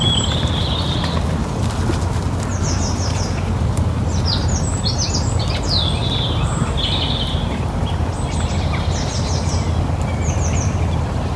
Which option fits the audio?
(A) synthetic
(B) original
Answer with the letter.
B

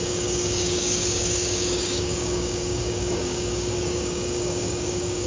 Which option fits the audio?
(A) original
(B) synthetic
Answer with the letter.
B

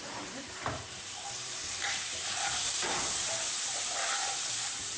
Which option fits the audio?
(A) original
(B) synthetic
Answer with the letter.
B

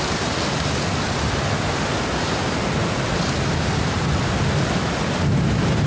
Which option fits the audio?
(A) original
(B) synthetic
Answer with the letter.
A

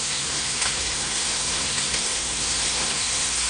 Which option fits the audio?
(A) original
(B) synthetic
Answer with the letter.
B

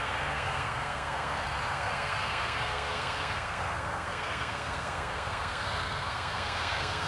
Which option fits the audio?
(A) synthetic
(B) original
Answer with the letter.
A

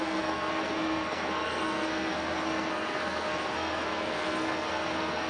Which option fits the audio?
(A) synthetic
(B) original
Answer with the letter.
A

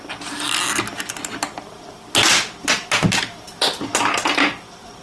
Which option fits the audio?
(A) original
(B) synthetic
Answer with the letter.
A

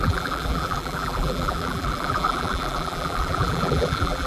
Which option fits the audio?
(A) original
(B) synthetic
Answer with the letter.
B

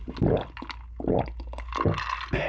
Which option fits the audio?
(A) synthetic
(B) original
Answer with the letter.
B